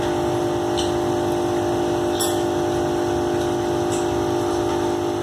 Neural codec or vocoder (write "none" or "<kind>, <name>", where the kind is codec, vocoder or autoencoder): none